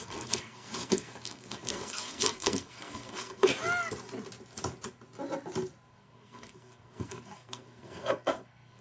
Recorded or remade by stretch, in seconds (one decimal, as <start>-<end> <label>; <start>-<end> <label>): 0.0-3.5 remade; 3.5-5.9 recorded; 5.9-8.8 remade